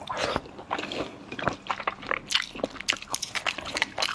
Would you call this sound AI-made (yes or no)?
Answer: no